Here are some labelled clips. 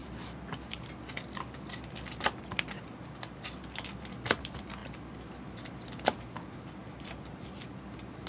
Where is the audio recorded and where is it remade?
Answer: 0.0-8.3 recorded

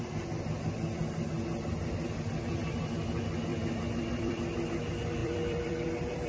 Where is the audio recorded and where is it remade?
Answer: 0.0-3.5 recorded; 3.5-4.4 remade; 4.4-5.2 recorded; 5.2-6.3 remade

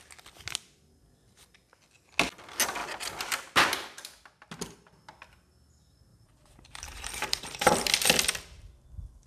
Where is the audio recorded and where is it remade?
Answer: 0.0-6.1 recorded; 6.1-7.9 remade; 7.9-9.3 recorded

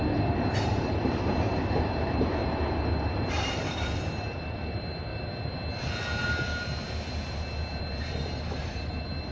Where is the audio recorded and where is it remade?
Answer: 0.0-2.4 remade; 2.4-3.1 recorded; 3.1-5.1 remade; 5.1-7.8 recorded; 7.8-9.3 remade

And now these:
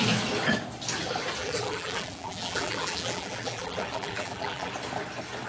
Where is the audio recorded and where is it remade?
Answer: 0.0-1.4 recorded; 1.4-4.7 remade; 4.7-5.5 recorded

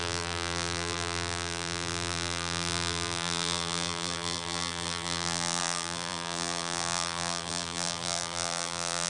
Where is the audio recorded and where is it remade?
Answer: 0.0-9.1 remade